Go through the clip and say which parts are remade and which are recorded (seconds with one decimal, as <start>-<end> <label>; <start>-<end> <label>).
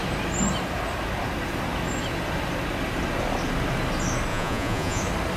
0.0-4.3 recorded; 4.3-5.0 remade; 5.0-5.4 recorded